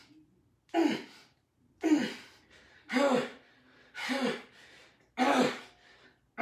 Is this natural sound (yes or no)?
yes